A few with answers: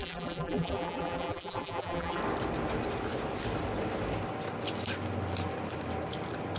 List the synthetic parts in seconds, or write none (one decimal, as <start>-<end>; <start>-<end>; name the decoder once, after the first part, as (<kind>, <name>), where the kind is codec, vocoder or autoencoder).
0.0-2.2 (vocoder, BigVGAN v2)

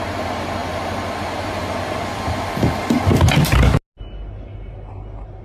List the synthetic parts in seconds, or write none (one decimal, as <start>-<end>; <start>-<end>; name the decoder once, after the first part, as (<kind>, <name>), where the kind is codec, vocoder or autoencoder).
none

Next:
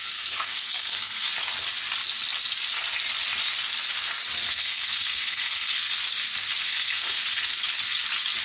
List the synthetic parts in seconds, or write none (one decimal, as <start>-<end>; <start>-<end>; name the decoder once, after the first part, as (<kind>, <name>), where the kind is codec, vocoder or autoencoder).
0.0-1.3 (codec, SNAC); 4.6-5.8; 6.6-7.2

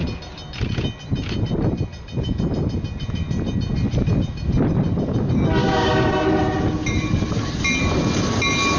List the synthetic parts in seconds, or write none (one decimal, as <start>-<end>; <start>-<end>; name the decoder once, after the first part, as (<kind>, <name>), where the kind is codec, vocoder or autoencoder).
5.6-6.2 (codec, DAC)

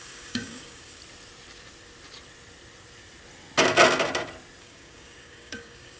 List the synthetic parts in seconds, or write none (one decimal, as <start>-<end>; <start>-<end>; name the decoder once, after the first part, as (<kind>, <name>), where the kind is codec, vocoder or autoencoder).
0.0-1.0 (codec, DAC); 4.6-6.0